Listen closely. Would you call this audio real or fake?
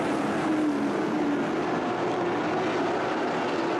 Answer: real